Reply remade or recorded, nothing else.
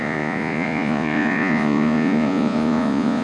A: remade